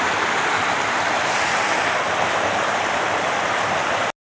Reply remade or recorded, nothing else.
recorded